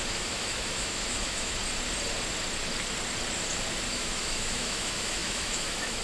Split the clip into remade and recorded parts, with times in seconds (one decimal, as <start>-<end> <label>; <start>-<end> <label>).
0.0-1.6 remade; 1.6-3.9 recorded; 3.9-6.0 remade